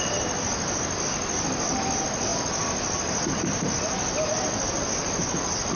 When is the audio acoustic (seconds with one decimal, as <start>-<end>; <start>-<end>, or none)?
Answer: 0.0-5.8

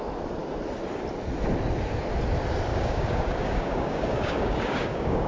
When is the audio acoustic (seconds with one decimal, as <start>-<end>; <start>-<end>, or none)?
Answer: 0.0-2.7